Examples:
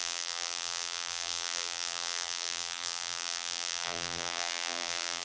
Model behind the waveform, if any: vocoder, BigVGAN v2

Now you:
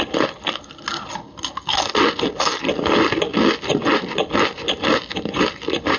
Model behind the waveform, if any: none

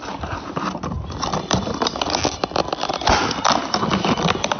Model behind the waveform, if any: none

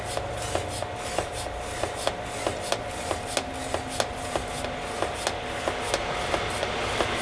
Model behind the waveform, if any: none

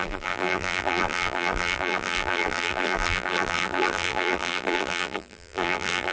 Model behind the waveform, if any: vocoder, BigVGAN v2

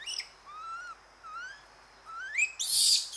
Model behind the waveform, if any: none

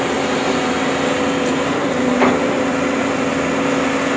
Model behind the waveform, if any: none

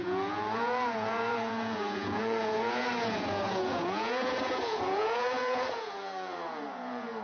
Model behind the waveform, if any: vocoder, Vocos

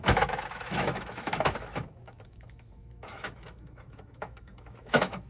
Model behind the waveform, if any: autoencoder, DAC-VAE